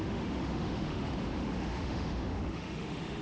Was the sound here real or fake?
fake